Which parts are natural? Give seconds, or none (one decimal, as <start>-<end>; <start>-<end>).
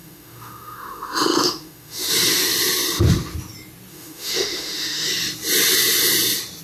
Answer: 2.1-3.9; 5.1-6.6